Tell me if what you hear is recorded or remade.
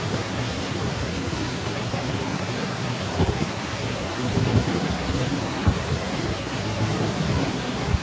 remade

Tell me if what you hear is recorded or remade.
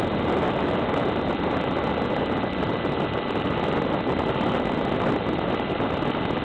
recorded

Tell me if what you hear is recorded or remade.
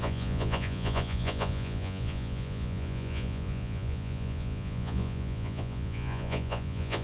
remade